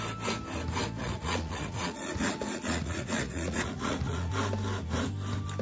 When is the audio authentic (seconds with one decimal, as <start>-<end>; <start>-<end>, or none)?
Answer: 0.0-1.0; 4.3-5.6